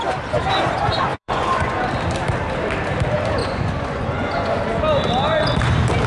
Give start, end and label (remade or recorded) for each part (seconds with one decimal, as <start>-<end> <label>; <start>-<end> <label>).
0.0-1.1 recorded; 1.1-1.9 remade; 1.9-3.4 recorded; 3.4-4.6 remade; 4.6-6.1 recorded